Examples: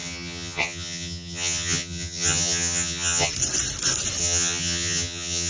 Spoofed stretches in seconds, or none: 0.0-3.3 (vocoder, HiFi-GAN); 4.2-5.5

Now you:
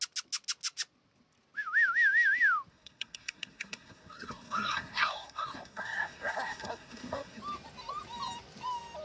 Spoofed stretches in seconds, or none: 2.7-7.4 (codec, SNAC)

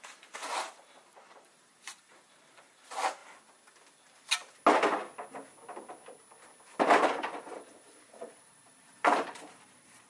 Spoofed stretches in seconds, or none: 0.0-3.2 (vocoder, BigVGAN v2); 7.0-10.1

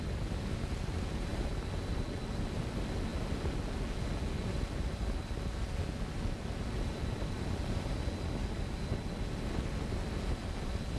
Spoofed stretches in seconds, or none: none